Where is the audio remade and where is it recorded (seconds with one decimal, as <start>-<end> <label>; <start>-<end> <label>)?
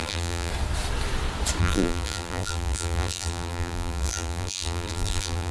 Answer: 0.0-0.5 remade; 0.5-1.6 recorded; 1.6-5.5 remade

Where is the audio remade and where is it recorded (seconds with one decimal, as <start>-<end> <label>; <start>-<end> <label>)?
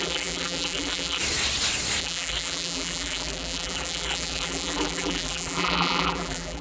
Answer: 0.0-1.2 remade; 1.2-2.0 recorded; 2.0-6.6 remade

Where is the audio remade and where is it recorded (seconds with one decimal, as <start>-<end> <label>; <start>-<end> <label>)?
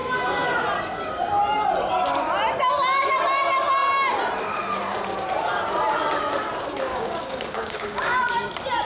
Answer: 0.0-6.9 recorded; 6.9-8.3 remade; 8.3-8.8 recorded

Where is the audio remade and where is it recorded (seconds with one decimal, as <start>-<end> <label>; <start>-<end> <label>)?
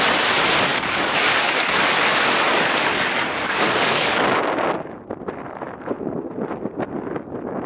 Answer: 0.0-0.7 recorded; 0.7-4.4 remade; 4.4-7.7 recorded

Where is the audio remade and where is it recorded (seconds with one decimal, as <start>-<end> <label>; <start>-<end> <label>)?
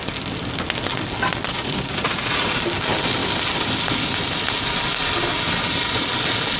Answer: 0.0-1.5 recorded; 1.5-2.6 remade; 2.6-6.6 recorded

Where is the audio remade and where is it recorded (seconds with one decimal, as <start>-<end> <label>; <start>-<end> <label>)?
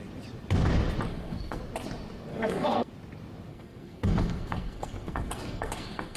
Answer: 0.0-1.1 recorded; 1.1-1.6 remade; 1.6-2.3 recorded; 2.3-2.9 remade; 2.9-3.5 recorded; 3.5-6.2 remade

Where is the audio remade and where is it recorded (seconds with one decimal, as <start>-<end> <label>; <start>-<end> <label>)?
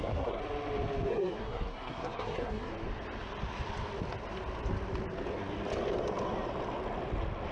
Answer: 0.0-0.4 remade; 0.4-1.1 recorded; 1.1-2.7 remade; 2.7-7.5 recorded